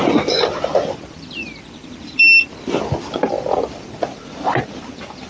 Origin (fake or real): real